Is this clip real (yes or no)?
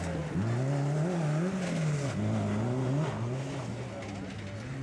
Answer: yes